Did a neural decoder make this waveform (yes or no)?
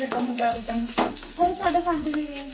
yes